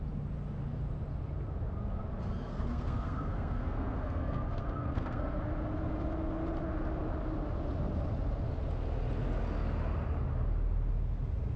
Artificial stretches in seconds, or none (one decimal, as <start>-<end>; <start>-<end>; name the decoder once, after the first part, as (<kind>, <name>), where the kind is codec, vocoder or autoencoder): 2.5-5.4 (codec, SNAC)